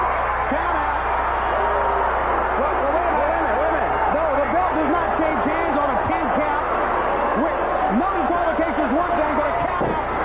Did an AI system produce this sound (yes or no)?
no